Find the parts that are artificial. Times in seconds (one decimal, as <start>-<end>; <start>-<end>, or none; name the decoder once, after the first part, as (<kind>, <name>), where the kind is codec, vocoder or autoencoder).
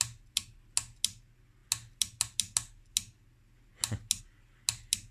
none